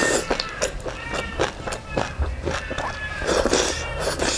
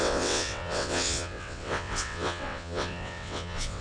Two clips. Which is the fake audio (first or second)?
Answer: second